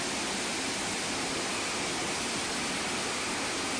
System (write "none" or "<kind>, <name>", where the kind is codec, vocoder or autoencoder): none